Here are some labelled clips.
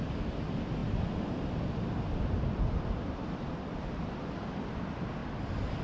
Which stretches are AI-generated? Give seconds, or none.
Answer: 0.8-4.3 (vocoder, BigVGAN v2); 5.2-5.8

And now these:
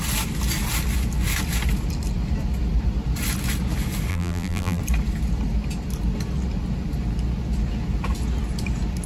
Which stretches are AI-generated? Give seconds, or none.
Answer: 4.1-4.8 (vocoder, BigVGAN v2)

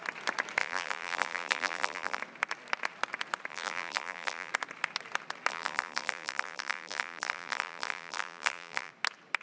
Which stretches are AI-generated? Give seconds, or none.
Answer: 0.6-2.2 (vocoder, BigVGAN v2); 3.5-4.5; 5.5-8.9

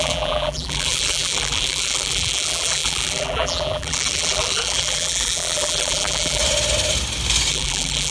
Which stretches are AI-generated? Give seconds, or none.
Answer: 0.0-6.4 (vocoder, BigVGAN v2); 7.5-8.1